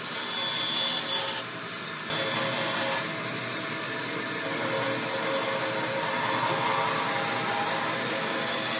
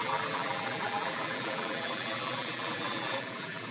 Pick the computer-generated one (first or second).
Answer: second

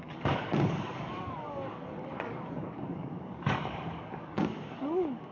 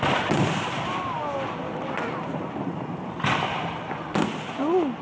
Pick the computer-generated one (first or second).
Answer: first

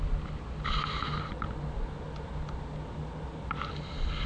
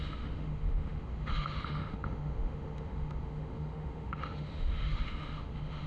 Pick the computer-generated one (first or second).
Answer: second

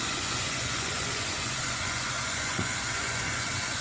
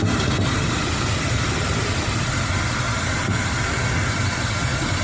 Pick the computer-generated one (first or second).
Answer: first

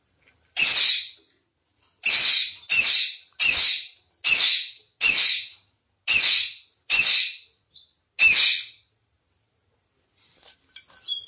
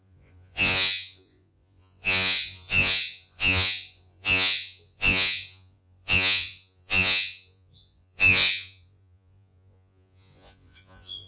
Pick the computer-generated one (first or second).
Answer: second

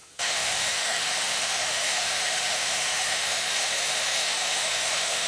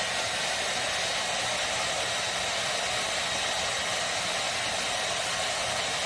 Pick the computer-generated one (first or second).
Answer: first